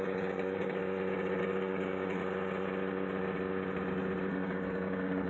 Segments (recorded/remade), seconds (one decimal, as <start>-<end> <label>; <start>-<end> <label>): 0.0-0.8 remade; 0.8-1.4 recorded; 1.4-2.2 remade; 2.2-4.3 recorded; 4.3-5.3 remade